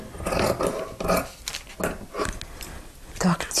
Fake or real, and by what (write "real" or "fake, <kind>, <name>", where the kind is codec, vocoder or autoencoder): real